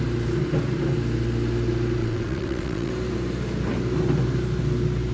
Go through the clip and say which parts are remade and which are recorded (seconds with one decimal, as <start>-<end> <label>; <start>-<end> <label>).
0.0-2.0 recorded; 2.0-2.9 remade; 2.9-5.1 recorded